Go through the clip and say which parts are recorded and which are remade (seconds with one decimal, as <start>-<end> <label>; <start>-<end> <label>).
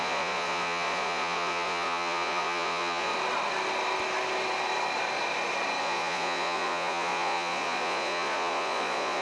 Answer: 0.0-3.1 remade; 3.1-5.8 recorded; 5.8-9.2 remade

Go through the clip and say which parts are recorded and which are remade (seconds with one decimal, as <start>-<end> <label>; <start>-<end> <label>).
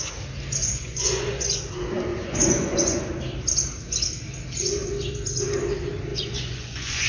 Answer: 0.0-0.6 recorded; 0.6-1.6 remade; 1.6-2.1 recorded; 2.1-3.0 remade; 3.0-6.1 recorded; 6.1-7.1 remade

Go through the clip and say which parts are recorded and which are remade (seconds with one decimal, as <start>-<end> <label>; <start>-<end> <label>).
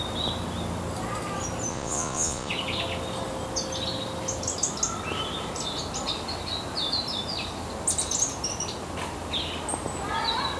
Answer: 0.0-1.7 recorded; 1.7-2.5 remade; 2.5-10.6 recorded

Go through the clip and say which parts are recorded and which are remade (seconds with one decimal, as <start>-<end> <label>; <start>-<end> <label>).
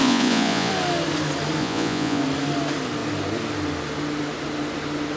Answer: 0.0-0.7 remade; 0.7-1.6 recorded; 1.6-2.2 remade; 2.2-5.2 recorded